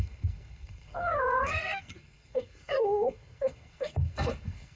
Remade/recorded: remade